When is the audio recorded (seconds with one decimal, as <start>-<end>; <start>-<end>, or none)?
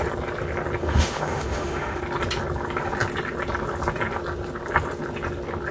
0.0-0.8; 2.0-5.7